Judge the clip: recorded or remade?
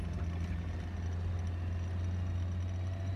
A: recorded